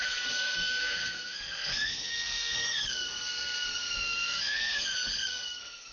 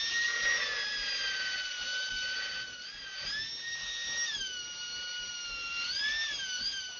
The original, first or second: second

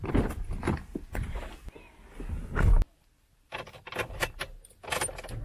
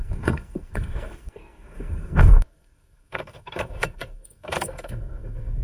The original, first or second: first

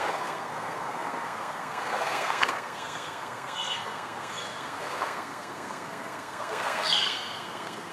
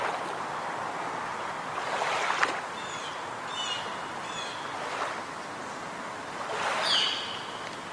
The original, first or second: second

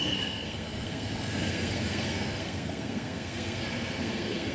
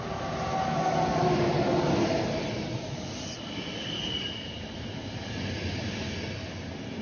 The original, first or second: second